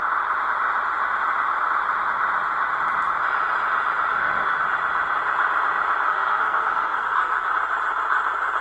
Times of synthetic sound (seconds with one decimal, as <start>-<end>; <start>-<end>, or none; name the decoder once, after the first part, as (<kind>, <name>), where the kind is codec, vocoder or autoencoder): 4.1-4.6 (codec, SNAC); 6.1-7.5